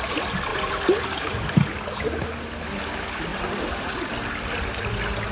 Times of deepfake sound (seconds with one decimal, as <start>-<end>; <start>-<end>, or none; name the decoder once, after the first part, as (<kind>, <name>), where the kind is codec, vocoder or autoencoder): 0.5-1.7 (vocoder, BigVGAN v2); 3.3-3.9